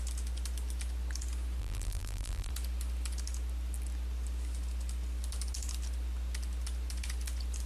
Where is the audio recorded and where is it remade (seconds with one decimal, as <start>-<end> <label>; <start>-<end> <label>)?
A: 0.0-1.6 recorded; 1.6-2.5 remade; 2.5-7.7 recorded